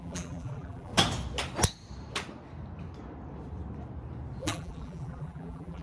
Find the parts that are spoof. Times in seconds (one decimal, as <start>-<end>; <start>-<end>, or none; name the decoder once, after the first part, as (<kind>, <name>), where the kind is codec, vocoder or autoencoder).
0.0-0.9 (vocoder, BigVGAN v2); 4.4-5.8